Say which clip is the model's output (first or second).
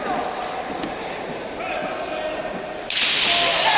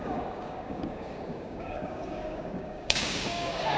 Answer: second